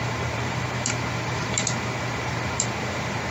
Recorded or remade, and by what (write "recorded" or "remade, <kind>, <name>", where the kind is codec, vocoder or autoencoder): remade, vocoder, BigVGAN v2